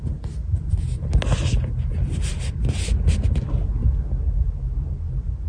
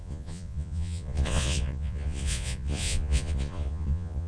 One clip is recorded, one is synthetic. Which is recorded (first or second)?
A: first